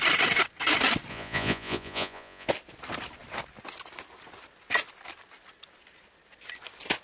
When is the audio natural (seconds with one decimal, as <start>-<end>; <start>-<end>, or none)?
0.0-1.1; 2.5-7.0